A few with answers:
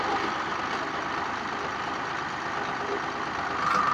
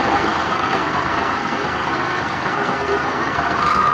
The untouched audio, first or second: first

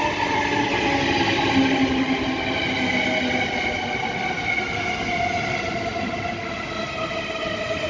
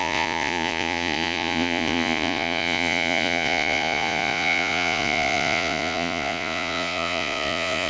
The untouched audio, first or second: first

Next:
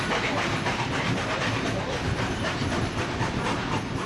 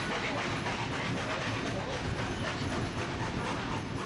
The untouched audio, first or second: second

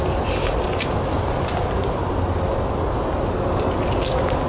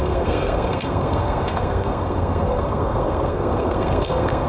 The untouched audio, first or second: first